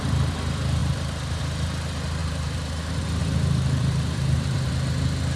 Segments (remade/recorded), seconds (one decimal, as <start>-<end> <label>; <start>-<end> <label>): 0.0-0.8 recorded; 0.8-1.4 remade; 1.4-2.2 recorded; 2.2-2.8 remade; 2.8-3.2 recorded; 3.2-4.7 remade; 4.7-5.4 recorded